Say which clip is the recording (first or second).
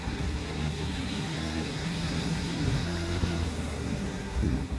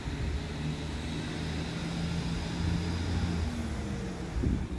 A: second